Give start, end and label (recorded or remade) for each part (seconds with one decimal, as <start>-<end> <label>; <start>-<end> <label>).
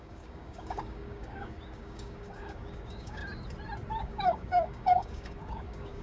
0.0-3.2 remade; 3.2-4.0 recorded; 4.0-6.0 remade